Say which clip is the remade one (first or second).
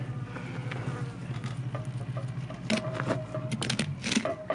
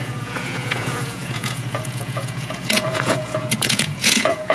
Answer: second